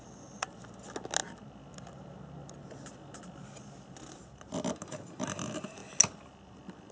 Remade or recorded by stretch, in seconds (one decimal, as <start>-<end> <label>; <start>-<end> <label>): 0.0-6.9 recorded

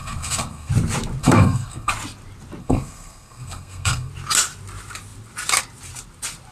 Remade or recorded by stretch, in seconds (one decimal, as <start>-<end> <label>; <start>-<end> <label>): 0.0-0.7 remade; 0.7-1.2 recorded; 1.2-1.9 remade; 1.9-2.6 recorded; 2.6-4.1 remade; 4.1-6.5 recorded

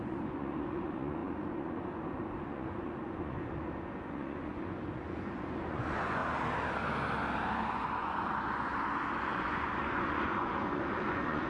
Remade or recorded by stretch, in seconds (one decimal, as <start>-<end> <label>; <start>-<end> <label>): 0.0-6.2 remade; 6.2-7.7 recorded; 7.7-8.7 remade; 8.7-9.2 recorded; 9.2-11.5 remade